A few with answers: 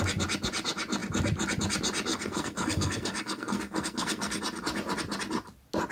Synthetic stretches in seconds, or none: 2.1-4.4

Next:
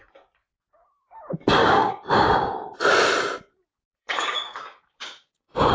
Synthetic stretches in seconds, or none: 1.6-2.3; 4.0-5.7